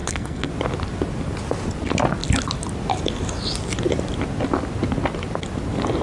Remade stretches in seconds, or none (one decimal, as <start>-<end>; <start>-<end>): 0.0-0.5